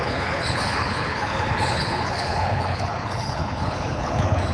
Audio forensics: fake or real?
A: fake